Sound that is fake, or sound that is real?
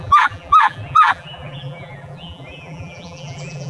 fake